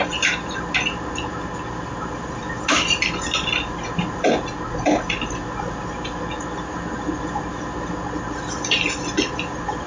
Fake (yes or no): no